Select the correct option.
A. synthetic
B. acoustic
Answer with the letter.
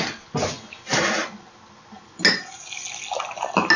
B